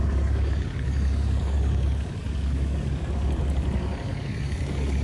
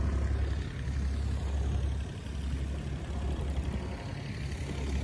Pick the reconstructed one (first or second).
first